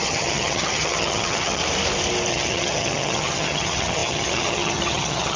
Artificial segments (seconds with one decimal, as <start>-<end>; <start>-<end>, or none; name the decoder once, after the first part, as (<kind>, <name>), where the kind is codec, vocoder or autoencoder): 0.0-1.6 (vocoder, HiFi-GAN); 2.3-5.4

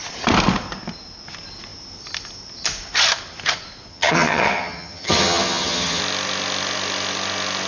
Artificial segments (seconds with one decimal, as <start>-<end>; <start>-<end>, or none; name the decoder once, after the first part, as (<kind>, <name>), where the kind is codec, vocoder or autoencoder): 3.9-6.0 (vocoder, HiFi-GAN)

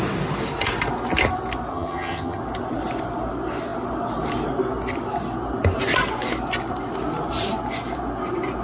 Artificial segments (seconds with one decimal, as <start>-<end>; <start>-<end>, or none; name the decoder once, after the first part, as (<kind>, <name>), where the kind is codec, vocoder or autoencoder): 1.7-2.4 (vocoder, HiFi-GAN)

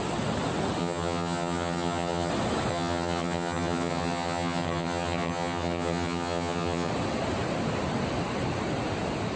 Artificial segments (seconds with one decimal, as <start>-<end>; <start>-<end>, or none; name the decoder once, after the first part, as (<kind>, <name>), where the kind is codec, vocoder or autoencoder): 0.8-2.3 (vocoder, HiFi-GAN); 2.7-6.9